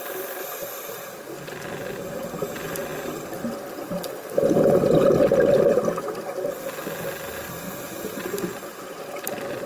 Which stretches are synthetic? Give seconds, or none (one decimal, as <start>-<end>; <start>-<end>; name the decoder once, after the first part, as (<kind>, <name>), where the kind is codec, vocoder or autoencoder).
none